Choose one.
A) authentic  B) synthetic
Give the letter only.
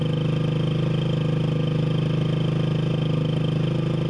A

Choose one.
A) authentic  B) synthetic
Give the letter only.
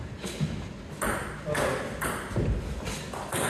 A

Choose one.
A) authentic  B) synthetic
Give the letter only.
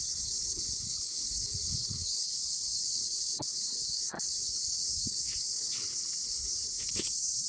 B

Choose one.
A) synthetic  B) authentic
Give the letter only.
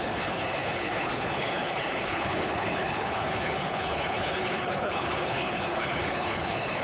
A